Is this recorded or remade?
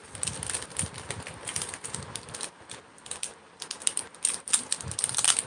recorded